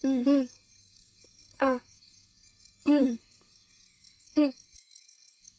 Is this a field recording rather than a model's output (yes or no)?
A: no